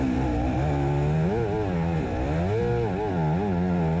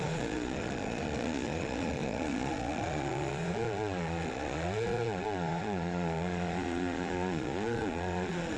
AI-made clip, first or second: second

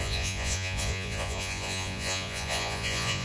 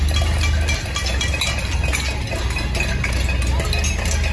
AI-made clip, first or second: first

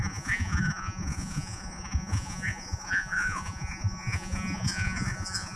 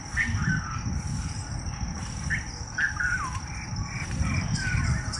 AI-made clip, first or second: first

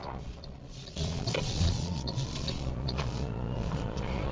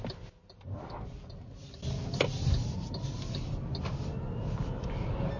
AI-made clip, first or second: first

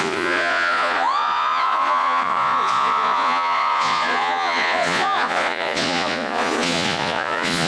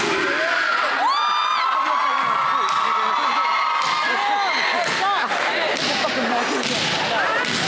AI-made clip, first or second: first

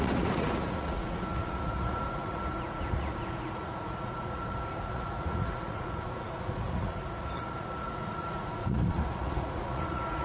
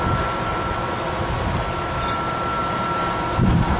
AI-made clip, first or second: first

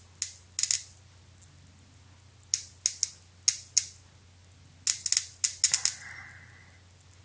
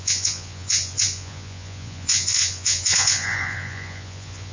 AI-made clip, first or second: second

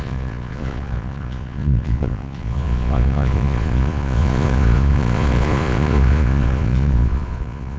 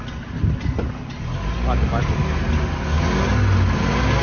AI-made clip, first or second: first